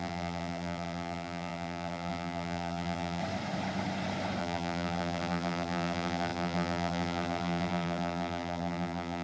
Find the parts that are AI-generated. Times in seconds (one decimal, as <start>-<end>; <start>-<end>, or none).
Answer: 0.0-3.2; 4.4-9.2